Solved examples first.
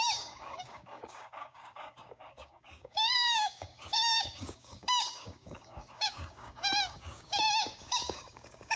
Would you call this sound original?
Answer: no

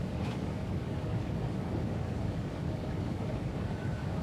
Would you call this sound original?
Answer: no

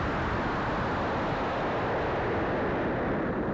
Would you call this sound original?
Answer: yes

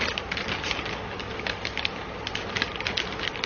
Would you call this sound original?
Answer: yes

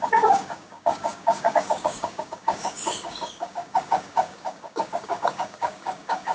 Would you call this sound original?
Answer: no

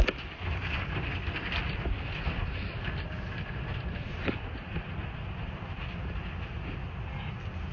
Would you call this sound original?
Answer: yes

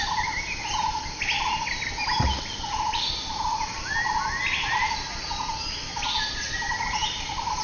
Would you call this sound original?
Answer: yes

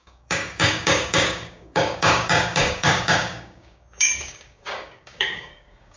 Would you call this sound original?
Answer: no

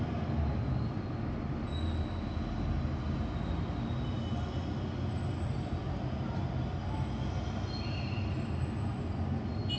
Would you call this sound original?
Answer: yes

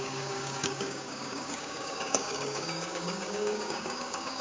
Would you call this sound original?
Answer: no